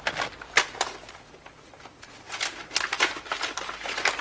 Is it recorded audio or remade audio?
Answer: remade